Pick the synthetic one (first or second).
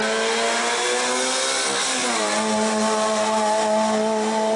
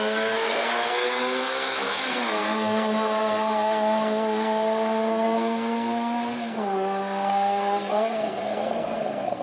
second